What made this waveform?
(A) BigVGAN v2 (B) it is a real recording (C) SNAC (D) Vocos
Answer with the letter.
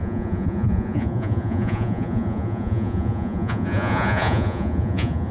D